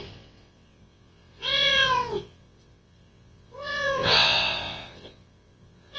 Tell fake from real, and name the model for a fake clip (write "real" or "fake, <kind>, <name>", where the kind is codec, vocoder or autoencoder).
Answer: fake, vocoder, WaveNeXt